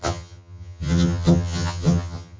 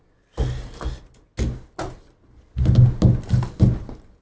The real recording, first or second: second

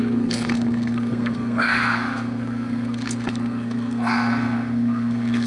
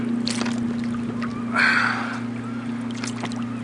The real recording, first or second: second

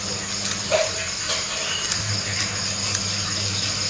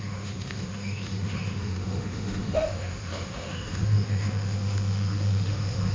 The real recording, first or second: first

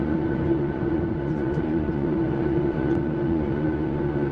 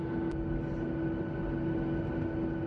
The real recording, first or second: second